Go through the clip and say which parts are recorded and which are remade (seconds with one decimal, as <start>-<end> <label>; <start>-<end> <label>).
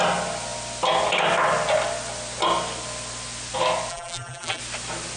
0.0-3.9 recorded; 3.9-4.6 remade; 4.6-5.2 recorded